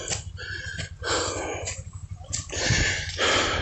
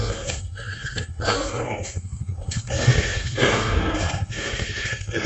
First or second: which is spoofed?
second